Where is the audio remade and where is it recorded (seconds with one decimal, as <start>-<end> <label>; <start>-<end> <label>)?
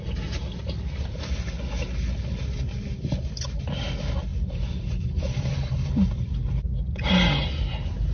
0.0-4.3 recorded; 4.3-6.7 remade; 6.7-8.1 recorded